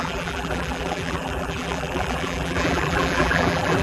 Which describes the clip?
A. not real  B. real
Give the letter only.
A